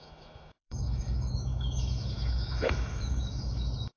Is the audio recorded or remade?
remade